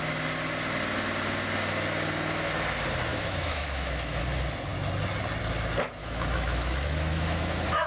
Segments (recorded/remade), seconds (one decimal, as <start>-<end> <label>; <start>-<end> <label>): 0.0-3.1 recorded; 3.1-4.2 remade; 4.2-6.0 recorded; 6.0-7.9 remade